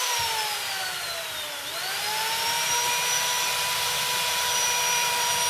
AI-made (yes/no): yes